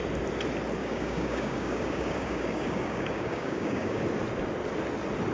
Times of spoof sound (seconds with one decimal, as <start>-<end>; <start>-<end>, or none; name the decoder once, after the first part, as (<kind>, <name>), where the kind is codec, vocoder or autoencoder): 0.8-4.0 (codec, DAC)